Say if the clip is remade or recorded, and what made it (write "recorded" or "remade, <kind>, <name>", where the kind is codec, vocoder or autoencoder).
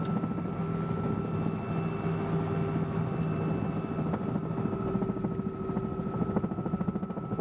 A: recorded